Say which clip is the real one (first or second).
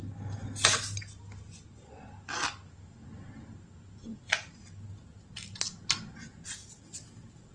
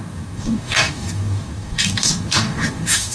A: first